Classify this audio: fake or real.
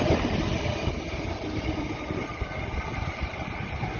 fake